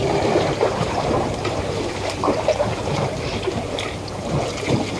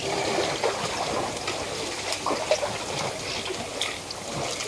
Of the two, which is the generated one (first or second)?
first